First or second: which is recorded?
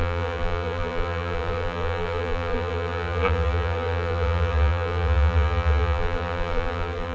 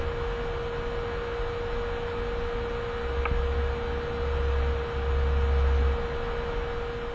second